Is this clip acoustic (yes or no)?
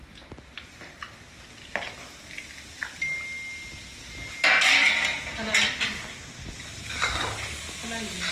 yes